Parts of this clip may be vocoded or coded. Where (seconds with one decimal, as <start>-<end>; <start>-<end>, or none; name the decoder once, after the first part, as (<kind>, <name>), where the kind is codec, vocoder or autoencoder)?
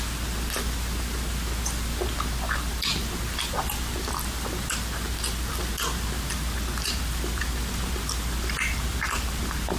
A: none